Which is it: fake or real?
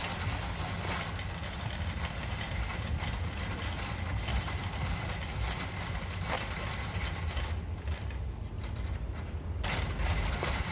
real